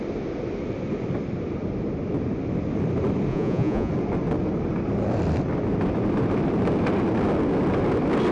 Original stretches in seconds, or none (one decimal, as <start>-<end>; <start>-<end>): 0.0-3.3; 3.9-8.3